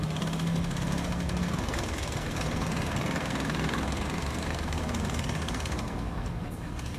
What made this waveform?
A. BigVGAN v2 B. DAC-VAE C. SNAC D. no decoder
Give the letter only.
C